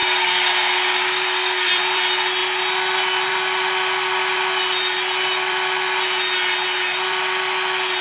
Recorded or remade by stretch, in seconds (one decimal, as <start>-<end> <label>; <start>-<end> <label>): 0.0-1.7 remade; 1.7-8.0 recorded